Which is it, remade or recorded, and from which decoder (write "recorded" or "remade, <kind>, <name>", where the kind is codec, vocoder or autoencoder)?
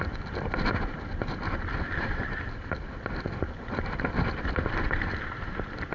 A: remade, vocoder, BigVGAN v2